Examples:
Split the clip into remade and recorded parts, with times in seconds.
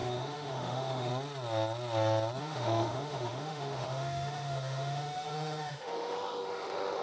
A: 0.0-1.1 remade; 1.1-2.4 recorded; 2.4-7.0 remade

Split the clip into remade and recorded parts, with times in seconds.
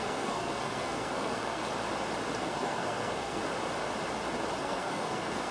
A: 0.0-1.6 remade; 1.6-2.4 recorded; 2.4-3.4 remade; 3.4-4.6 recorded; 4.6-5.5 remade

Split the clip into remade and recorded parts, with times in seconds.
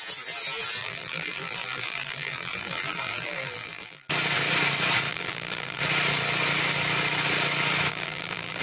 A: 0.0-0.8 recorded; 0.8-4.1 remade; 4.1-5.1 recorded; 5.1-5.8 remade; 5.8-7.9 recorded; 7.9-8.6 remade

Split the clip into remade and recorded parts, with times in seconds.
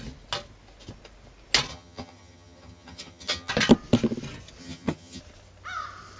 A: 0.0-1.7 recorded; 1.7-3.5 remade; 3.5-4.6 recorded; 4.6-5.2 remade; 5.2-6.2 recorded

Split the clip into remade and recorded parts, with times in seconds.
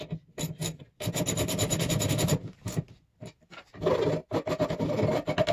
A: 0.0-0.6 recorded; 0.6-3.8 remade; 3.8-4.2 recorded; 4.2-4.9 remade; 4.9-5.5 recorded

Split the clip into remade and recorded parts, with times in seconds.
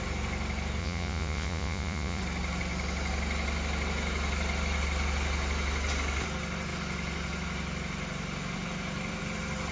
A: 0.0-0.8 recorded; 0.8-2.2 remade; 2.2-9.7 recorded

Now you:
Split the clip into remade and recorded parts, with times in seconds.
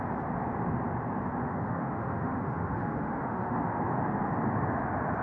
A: 0.0-1.4 recorded; 1.4-3.8 remade; 3.8-5.2 recorded